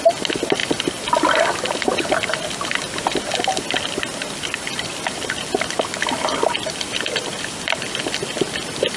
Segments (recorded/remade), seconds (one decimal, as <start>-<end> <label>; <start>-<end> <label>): 0.0-9.0 recorded